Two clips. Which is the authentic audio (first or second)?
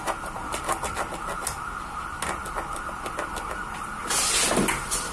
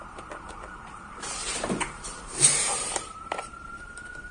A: first